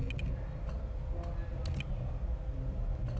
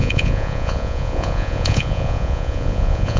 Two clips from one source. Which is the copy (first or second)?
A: second